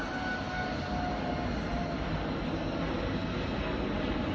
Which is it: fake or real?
real